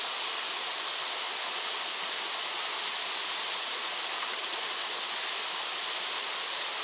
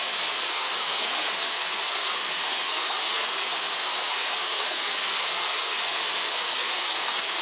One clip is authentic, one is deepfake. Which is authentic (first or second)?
first